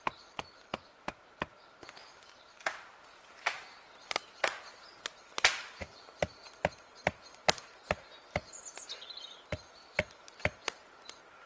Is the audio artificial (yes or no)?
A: no